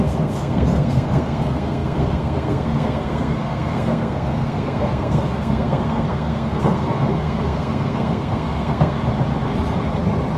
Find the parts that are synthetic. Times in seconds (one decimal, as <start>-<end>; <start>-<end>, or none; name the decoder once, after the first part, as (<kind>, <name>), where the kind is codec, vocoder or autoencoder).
0.0-9.0 (codec, SNAC)